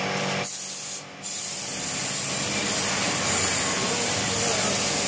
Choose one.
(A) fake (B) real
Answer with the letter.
B